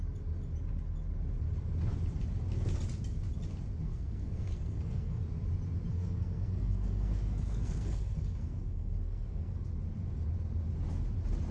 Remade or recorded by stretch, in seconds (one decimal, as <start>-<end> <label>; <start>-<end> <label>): 0.0-3.8 recorded; 3.8-5.2 remade; 5.2-5.9 recorded; 5.9-9.6 remade; 9.6-11.5 recorded